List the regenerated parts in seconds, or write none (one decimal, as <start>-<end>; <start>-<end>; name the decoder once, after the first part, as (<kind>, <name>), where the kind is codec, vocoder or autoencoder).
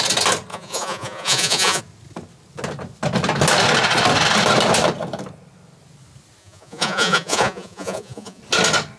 0.5-1.8 (vocoder, Vocos); 6.4-8.4